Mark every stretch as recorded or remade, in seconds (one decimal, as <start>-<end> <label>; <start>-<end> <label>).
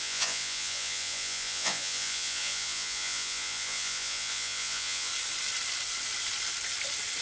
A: 0.0-5.1 remade; 5.1-7.2 recorded